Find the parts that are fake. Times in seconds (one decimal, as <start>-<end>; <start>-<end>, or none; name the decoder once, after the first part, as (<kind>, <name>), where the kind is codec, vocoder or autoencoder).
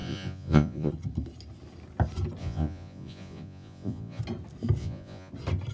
0.0-0.9 (vocoder, Vocos); 2.4-4.2; 4.8-5.3